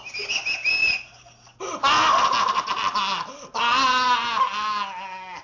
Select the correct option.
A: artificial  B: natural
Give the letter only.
B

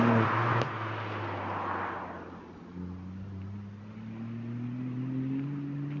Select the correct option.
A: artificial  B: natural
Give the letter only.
B